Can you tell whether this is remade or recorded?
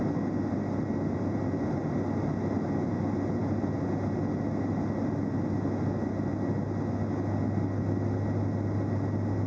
recorded